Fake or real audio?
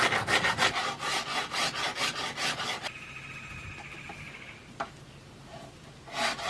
real